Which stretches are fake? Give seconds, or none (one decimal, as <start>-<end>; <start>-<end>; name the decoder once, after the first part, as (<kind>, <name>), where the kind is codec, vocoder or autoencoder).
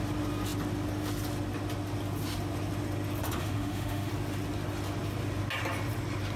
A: 3.4-4.1 (autoencoder, DAC-VAE)